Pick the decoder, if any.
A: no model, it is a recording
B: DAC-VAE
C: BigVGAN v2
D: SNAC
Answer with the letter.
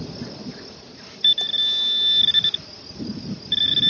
A